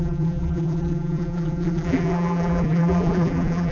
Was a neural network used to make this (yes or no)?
yes